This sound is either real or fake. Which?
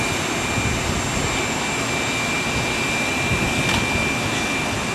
real